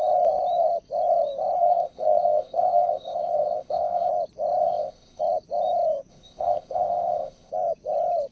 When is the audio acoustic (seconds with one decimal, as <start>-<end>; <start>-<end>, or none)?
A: 0.0-1.6; 4.1-4.6; 5.2-6.1; 7.5-8.3